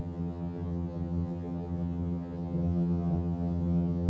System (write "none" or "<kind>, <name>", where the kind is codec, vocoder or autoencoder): vocoder, HiFi-GAN